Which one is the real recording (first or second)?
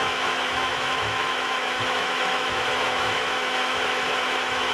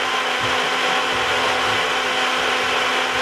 second